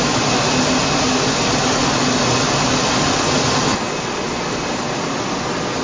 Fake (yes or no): no